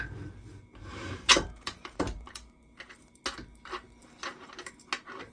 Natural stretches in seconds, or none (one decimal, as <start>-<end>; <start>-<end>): 0.0-0.9; 3.2-5.3